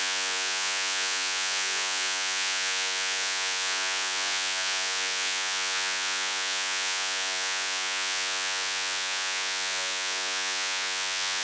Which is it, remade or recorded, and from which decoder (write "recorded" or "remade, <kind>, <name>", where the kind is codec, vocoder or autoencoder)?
remade, vocoder, Vocos